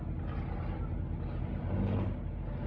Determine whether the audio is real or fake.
real